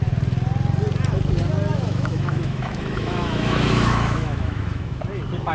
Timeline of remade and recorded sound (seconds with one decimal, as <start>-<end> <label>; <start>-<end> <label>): 0.0-1.7 recorded; 1.7-5.0 remade; 5.0-5.5 recorded